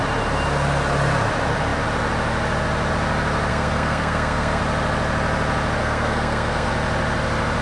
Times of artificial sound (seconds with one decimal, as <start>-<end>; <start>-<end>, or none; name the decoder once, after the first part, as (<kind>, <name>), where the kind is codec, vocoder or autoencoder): 3.5-4.6 (codec, SNAC); 5.8-6.7